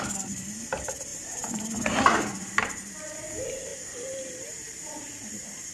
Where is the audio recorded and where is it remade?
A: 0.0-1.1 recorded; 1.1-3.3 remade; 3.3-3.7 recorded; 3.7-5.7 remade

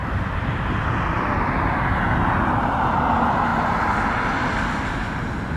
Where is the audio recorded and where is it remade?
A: 0.0-5.6 recorded

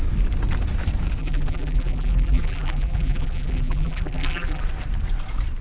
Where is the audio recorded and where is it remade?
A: 0.0-1.2 recorded; 1.2-4.6 remade; 4.6-5.6 recorded